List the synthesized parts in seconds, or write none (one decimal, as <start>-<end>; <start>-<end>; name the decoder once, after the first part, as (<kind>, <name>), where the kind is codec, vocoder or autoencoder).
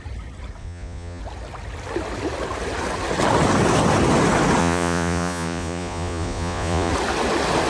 0.6-1.2 (vocoder, Vocos); 4.6-6.9